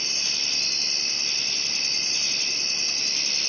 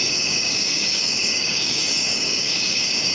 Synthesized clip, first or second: second